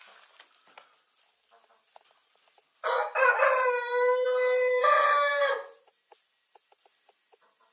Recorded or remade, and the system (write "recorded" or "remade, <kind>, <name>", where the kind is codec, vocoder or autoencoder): recorded